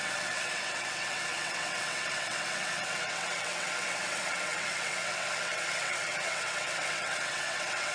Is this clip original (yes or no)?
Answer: no